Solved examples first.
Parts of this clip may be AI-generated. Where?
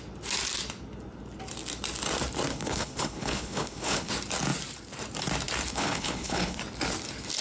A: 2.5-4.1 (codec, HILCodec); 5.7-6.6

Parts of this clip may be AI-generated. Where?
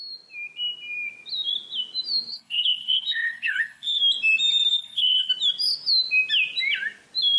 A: 2.3-4.0 (codec, HILCodec); 4.7-5.3